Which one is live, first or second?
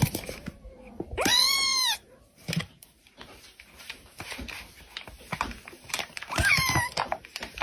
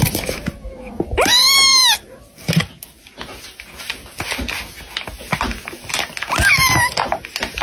second